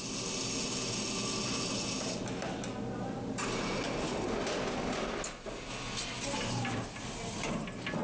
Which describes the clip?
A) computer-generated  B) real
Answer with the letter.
B